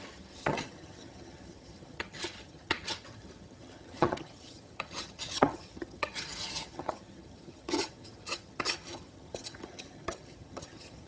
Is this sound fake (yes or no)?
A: yes